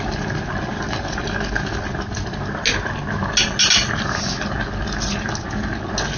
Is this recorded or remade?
recorded